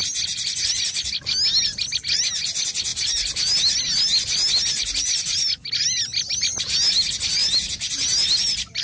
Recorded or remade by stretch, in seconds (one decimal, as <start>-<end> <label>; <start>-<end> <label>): 0.0-8.8 recorded